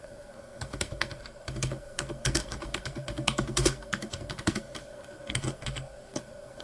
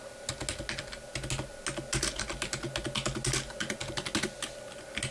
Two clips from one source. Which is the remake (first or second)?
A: first